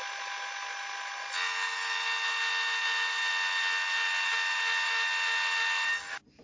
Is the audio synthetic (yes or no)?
no